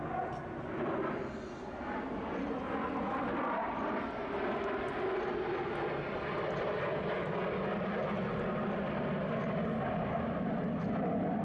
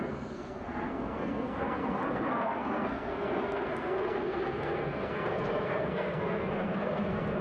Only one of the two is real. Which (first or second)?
first